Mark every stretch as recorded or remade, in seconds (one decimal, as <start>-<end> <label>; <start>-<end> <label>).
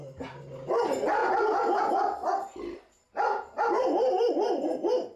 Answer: 0.0-5.2 recorded